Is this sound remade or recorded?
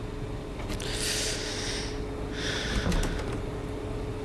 recorded